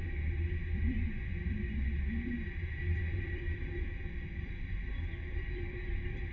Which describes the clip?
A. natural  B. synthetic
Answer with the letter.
B